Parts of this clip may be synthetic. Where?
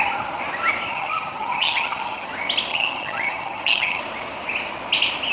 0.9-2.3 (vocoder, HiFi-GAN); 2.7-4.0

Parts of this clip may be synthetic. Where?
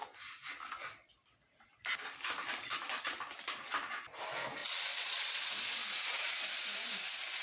4.6-5.5 (vocoder, Vocos)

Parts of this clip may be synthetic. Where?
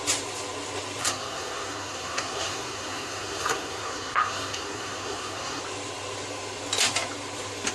1.0-5.6 (codec, SNAC)